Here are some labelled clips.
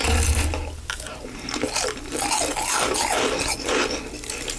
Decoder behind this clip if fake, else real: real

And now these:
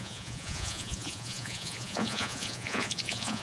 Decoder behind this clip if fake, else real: fake, vocoder, Vocos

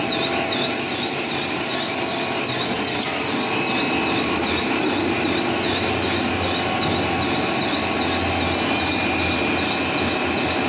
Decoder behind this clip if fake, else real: real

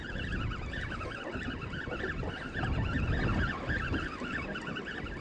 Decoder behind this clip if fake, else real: real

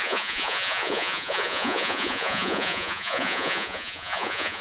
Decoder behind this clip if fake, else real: fake, vocoder, Vocos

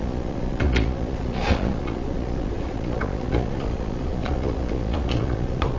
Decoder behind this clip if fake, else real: fake, vocoder, Vocos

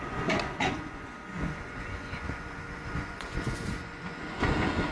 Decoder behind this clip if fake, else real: fake, vocoder, Vocos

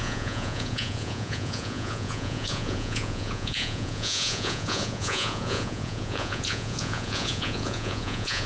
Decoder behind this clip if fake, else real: fake, vocoder, Vocos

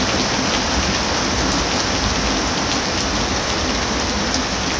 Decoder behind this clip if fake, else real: real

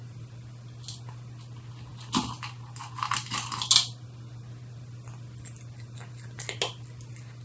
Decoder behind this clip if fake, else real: real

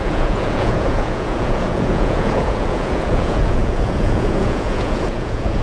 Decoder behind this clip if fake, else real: fake, vocoder, Vocos